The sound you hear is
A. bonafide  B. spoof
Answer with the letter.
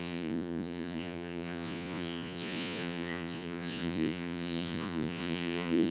B